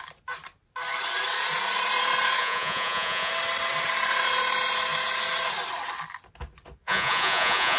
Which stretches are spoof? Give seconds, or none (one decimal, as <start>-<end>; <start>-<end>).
2.4-3.3; 6.8-7.8